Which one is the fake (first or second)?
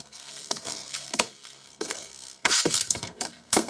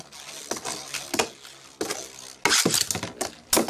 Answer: first